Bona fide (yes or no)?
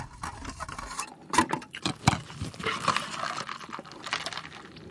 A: yes